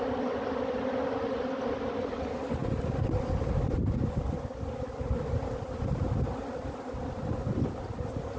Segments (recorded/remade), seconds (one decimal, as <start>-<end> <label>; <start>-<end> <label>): 0.0-8.4 recorded